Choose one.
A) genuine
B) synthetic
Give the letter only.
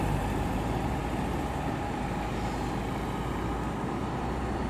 A